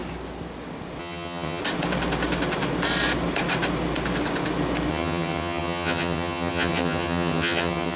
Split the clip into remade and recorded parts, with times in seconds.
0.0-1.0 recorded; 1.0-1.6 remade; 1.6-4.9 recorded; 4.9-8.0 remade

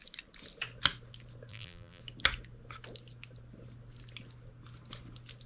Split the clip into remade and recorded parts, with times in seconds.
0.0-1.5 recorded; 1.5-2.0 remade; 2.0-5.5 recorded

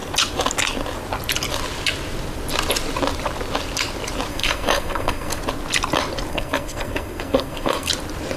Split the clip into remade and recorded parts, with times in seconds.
0.0-4.3 recorded; 4.3-5.4 remade; 5.4-6.3 recorded; 6.3-7.9 remade; 7.9-8.4 recorded

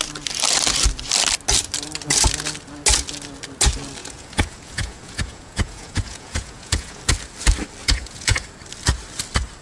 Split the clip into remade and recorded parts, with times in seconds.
0.0-4.0 recorded; 4.0-7.0 remade; 7.0-7.8 recorded; 7.8-8.4 remade; 8.4-9.6 recorded